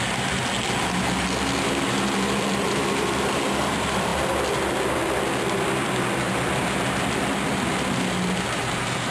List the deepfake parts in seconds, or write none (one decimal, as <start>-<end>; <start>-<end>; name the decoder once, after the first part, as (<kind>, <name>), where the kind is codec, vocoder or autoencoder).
none